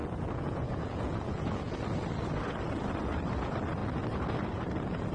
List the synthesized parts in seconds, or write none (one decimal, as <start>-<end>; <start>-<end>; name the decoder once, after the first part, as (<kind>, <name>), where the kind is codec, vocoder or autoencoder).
0.0-1.8 (vocoder, Vocos)